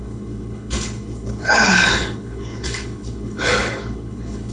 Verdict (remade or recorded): remade